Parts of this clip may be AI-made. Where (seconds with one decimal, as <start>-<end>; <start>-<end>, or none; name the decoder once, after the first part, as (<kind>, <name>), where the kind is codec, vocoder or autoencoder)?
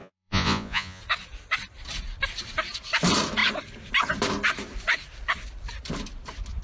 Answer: 0.0-1.0 (vocoder, Vocos)